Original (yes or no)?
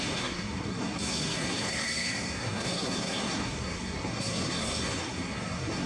no